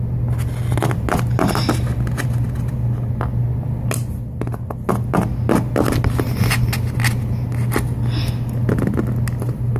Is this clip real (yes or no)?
yes